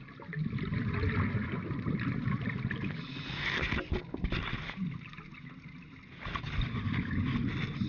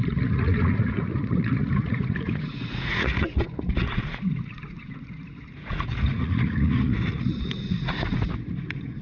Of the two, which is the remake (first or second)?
second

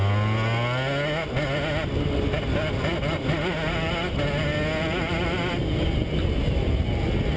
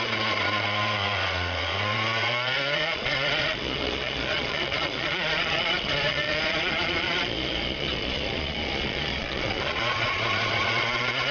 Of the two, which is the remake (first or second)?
second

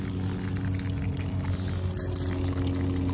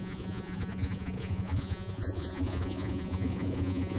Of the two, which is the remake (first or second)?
second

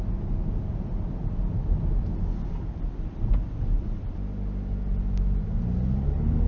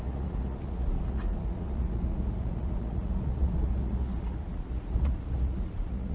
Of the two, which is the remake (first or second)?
second